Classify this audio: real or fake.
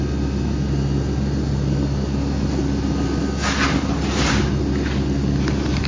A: real